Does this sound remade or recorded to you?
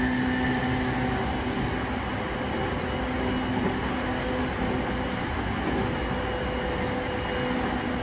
recorded